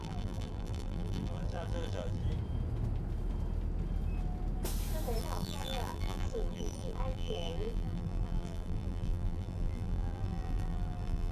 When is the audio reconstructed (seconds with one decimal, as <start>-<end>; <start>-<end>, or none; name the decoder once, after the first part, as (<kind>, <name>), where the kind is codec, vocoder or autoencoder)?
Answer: 0.0-2.2 (vocoder, BigVGAN v2); 5.2-11.3

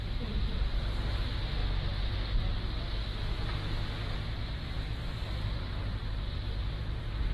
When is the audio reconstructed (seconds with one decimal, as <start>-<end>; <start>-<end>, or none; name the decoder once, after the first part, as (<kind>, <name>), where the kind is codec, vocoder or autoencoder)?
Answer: 0.0-1.6 (vocoder, BigVGAN v2); 4.5-7.3

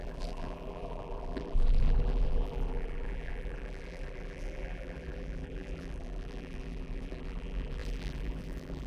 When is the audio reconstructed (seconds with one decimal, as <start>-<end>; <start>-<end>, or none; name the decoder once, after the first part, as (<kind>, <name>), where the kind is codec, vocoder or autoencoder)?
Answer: 0.0-8.9 (vocoder, BigVGAN v2)

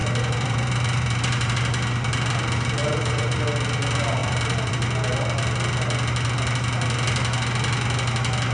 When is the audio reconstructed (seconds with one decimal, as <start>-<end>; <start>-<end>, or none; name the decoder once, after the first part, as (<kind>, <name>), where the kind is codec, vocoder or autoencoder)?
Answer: 0.0-1.5 (vocoder, BigVGAN v2); 2.8-3.4; 4.2-4.7

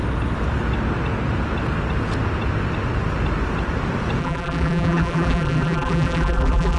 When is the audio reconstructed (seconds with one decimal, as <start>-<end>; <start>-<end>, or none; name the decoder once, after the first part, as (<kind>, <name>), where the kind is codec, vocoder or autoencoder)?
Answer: 4.2-6.8 (vocoder, BigVGAN v2)

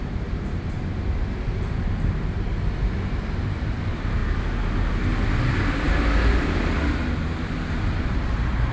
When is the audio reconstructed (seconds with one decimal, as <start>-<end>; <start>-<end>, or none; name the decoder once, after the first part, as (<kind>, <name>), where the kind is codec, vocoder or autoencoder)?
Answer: 0.0-4.2 (vocoder, BigVGAN v2); 7.7-8.7